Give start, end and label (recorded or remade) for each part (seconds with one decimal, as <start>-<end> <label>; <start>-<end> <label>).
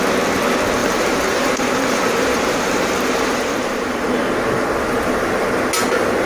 0.0-0.8 recorded; 0.8-4.6 remade; 4.6-6.3 recorded